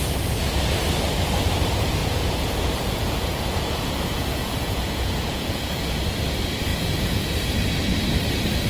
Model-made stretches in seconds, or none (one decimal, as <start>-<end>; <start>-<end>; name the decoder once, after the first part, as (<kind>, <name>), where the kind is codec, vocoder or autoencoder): 2.0-6.0 (vocoder, Vocos); 6.7-7.3